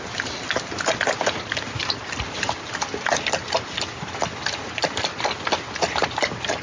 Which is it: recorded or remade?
recorded